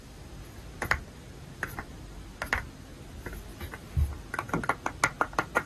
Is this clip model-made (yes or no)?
no